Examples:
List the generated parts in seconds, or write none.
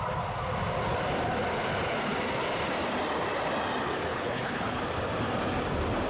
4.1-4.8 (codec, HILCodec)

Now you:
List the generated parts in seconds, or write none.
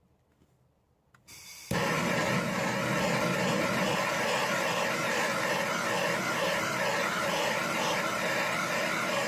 none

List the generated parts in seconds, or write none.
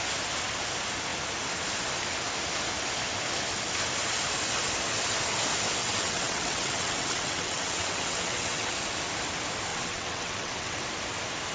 5.8-8.7 (vocoder, WaveNeXt); 9.7-10.8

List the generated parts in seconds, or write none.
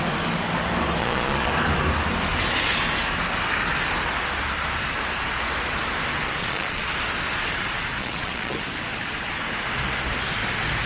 1.0-1.5 (vocoder, Vocos); 6.4-6.9; 8.0-8.6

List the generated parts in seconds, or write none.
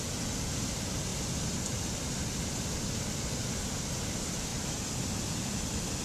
none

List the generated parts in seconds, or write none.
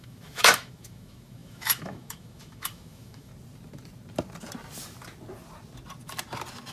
0.0-3.3 (autoencoder, DAC-VAE)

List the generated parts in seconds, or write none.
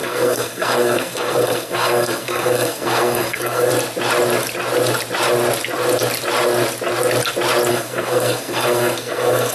0.0-3.7 (codec, SNAC); 7.7-9.5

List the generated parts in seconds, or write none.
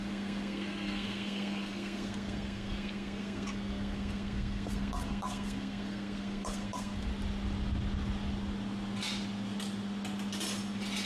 0.0-7.1 (codec, SNAC)